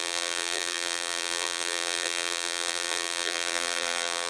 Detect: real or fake fake